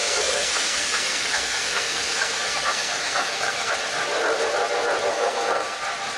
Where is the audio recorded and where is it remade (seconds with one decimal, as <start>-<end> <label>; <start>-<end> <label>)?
0.0-3.7 remade; 3.7-5.1 recorded; 5.1-5.8 remade; 5.8-6.2 recorded